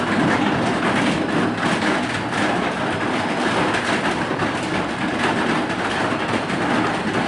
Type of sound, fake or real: real